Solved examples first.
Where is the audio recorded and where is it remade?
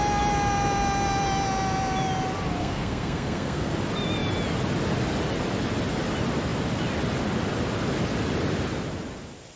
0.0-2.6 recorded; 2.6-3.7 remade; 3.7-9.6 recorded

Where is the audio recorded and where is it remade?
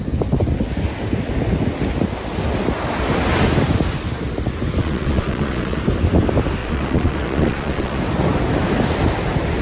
0.0-4.8 recorded; 4.8-5.8 remade; 5.8-6.6 recorded; 6.6-8.0 remade; 8.0-9.6 recorded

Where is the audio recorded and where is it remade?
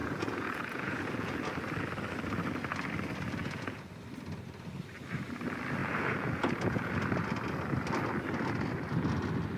0.0-1.4 remade; 1.4-3.4 recorded; 3.4-3.9 remade; 3.9-5.8 recorded; 5.8-6.9 remade; 6.9-9.6 recorded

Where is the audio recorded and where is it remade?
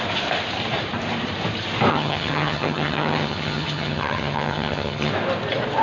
0.0-1.9 recorded; 1.9-5.1 remade; 5.1-5.8 recorded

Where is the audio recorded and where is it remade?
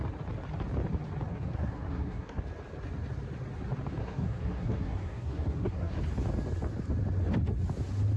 0.0-1.3 recorded; 1.3-2.4 remade; 2.4-4.0 recorded; 4.0-6.0 remade; 6.0-8.2 recorded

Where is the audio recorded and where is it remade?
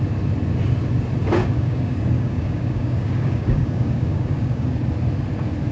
0.0-1.4 recorded; 1.4-4.7 remade; 4.7-5.7 recorded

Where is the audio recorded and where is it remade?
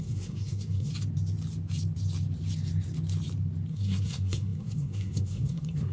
0.0-0.9 remade; 0.9-3.7 recorded; 3.7-5.9 remade